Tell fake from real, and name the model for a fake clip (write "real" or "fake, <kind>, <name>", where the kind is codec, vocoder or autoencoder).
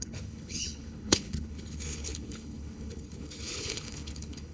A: fake, codec, HILCodec